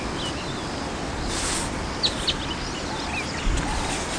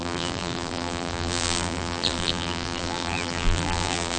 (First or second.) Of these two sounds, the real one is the first